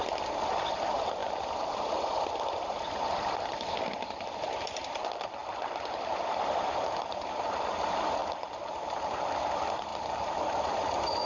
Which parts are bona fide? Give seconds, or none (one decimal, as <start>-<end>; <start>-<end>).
0.0-8.2; 9.4-11.3